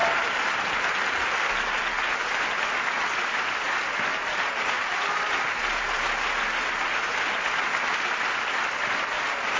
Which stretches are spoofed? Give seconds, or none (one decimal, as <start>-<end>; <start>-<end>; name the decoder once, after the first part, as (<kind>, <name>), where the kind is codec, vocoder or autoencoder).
4.1-4.6 (vocoder, BigVGAN v2)

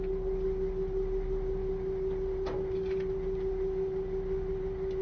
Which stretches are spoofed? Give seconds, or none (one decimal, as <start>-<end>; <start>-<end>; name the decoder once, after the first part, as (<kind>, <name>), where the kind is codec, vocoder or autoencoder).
none

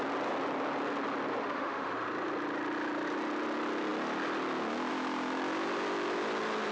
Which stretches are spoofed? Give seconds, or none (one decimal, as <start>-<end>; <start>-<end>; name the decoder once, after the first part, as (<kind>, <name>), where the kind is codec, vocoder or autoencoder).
1.4-1.9 (autoencoder, DAC-VAE)

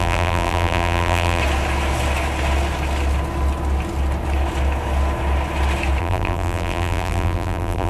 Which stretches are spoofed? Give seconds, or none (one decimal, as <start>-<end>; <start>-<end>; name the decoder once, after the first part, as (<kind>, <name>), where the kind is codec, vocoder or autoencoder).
0.0-1.4 (vocoder, BigVGAN v2); 6.0-7.9

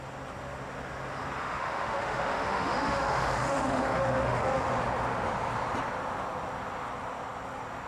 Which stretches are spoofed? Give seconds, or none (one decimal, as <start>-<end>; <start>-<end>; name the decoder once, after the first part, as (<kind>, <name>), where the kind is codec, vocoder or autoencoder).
1.4-4.7 (autoencoder, DAC-VAE)

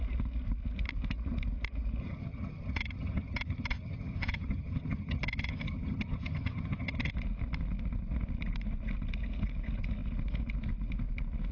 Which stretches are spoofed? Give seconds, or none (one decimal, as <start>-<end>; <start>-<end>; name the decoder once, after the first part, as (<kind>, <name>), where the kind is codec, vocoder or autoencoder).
2.0-7.1 (vocoder, HiFi-GAN)

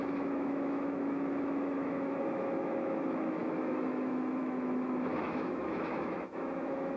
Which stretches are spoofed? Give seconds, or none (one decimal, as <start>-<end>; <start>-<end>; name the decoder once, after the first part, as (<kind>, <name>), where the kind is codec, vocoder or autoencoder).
0.0-7.0 (autoencoder, DAC-VAE)